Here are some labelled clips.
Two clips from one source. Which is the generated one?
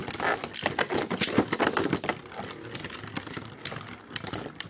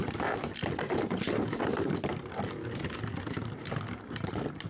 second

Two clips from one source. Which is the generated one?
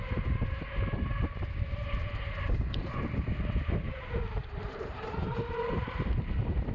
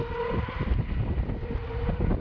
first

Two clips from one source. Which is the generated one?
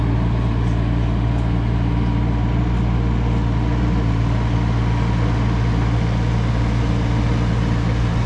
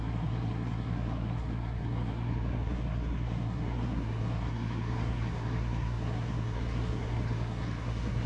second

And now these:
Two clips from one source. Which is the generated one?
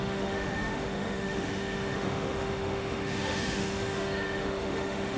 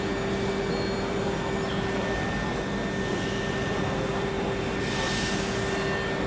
first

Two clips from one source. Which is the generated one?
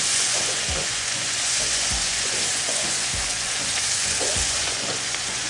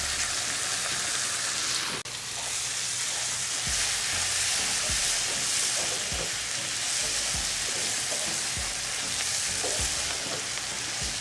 first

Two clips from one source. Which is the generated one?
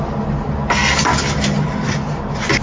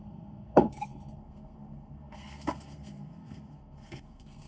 second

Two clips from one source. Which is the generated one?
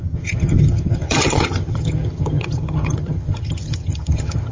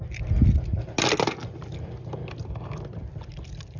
first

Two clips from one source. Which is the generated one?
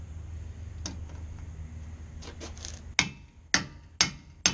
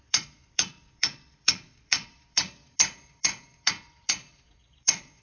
second